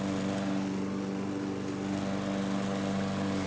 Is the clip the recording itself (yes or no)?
yes